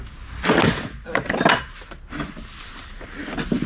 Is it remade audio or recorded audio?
recorded